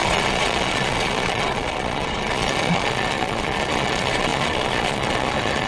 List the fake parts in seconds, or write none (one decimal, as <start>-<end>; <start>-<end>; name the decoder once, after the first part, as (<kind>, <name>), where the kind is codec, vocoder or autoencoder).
0.0-5.7 (vocoder, Vocos)